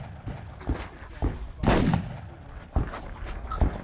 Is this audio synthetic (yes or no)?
no